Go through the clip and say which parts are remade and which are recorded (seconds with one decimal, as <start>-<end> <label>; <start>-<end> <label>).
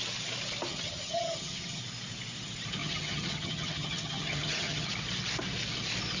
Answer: 0.0-0.7 recorded; 0.7-1.8 remade; 1.8-2.8 recorded; 2.8-4.9 remade; 4.9-6.2 recorded